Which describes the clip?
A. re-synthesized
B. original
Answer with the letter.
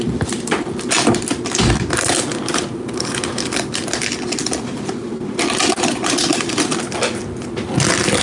B